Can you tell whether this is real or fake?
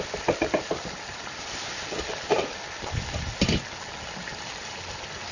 real